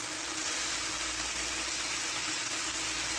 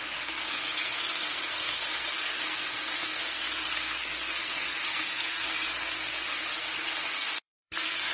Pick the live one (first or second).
first